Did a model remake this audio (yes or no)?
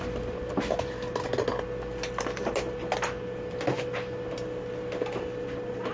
no